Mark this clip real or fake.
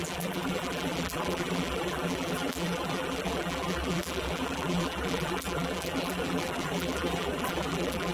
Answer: fake